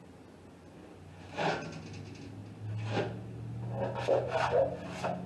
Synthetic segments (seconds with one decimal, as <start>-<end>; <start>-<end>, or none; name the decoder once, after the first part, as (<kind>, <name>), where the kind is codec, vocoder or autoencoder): none